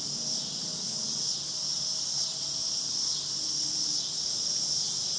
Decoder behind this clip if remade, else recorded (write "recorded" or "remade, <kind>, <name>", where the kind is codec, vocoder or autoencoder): recorded